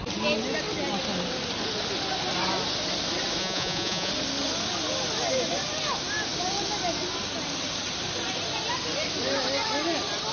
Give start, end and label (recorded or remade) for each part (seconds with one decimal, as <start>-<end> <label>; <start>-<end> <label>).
0.0-3.4 recorded; 3.4-4.1 remade; 4.1-10.3 recorded